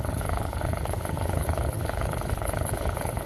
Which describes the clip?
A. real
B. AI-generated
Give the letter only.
B